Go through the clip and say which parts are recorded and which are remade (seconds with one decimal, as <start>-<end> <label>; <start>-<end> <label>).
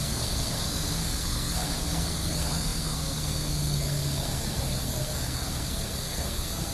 0.0-6.7 remade